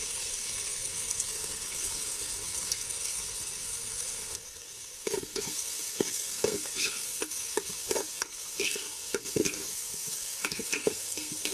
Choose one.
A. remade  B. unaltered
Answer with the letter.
A